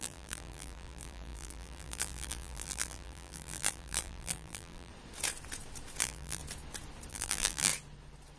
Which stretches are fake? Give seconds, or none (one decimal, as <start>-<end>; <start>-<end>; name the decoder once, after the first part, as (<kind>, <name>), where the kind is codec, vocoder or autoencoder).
0.0-4.9 (vocoder, BigVGAN v2); 6.0-6.4; 7.1-7.7